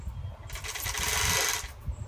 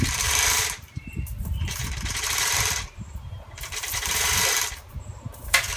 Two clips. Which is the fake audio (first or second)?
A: second